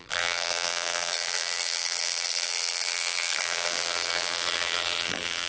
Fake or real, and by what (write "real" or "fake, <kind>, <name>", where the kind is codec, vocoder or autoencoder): fake, vocoder, BigVGAN v2